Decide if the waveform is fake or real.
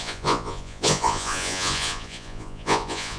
fake